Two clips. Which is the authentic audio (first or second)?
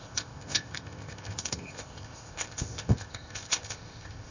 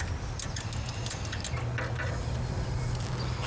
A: second